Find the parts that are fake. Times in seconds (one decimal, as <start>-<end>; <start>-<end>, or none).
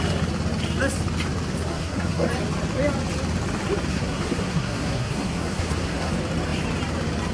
1.7-2.3; 3.9-6.1